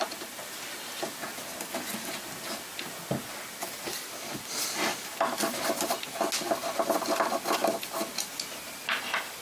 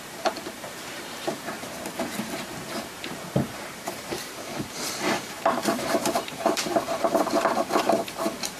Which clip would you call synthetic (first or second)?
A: second